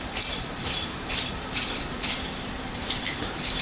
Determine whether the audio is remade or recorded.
remade